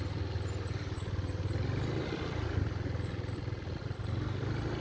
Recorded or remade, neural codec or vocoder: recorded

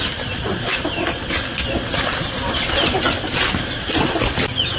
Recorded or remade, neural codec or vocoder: recorded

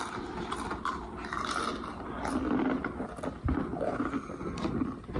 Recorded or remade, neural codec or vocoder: remade, vocoder, BigVGAN v2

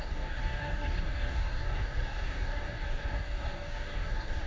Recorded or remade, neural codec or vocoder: remade, codec, DAC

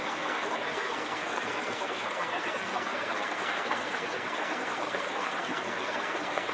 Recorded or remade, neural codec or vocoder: remade, codec, SNAC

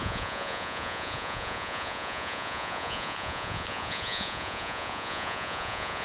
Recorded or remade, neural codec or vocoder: remade, vocoder, Vocos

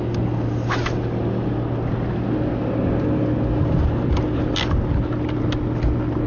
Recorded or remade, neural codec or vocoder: recorded